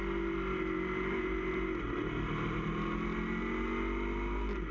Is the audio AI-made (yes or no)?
no